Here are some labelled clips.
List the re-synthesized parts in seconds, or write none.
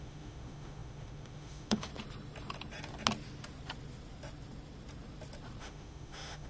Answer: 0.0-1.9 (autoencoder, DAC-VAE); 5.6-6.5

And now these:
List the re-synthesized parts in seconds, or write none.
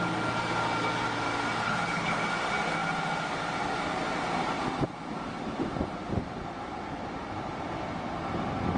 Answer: 1.6-2.2 (codec, HILCodec)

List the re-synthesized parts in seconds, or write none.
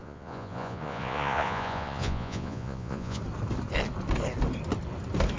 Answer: 0.0-3.2 (vocoder, Vocos)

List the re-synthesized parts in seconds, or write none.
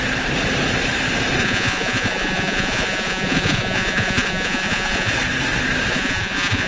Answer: 1.4-5.1 (vocoder, Vocos); 5.9-6.7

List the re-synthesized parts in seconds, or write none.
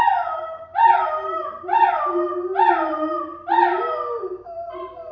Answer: 0.0-1.7 (vocoder, BigVGAN v2); 2.9-3.3; 4.4-5.1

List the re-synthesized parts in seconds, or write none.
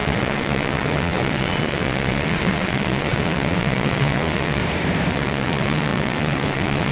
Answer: 0.0-4.6 (vocoder, WaveNeXt); 5.1-6.9